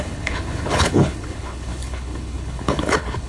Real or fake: fake